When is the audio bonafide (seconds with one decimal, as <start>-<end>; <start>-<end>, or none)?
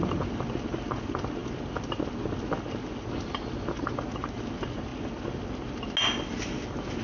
0.0-7.0